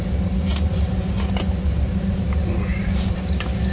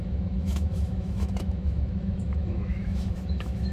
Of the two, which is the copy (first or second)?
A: second